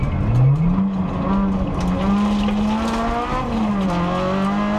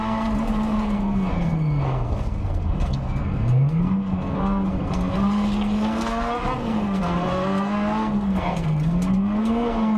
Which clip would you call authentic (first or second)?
first